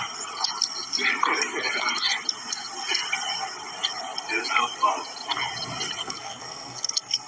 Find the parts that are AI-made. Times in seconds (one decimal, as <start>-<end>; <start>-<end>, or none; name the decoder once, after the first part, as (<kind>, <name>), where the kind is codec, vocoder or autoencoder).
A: 6.0-7.3 (codec, SNAC)